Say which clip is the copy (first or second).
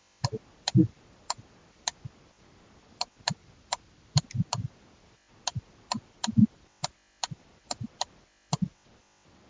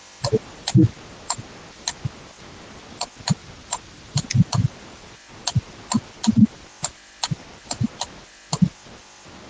first